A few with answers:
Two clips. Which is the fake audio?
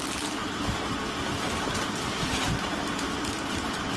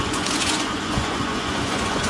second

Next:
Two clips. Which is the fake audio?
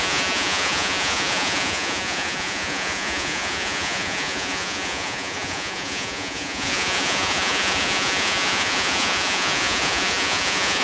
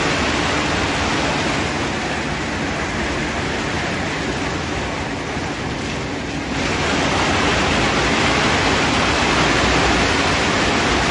first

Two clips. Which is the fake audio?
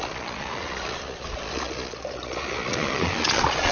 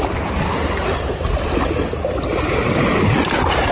first